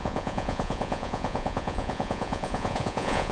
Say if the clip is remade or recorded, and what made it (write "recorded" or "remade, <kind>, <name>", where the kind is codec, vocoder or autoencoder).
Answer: remade, vocoder, Vocos